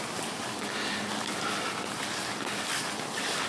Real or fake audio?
real